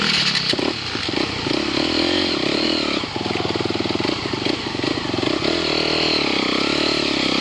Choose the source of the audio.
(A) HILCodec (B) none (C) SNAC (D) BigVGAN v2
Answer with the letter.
B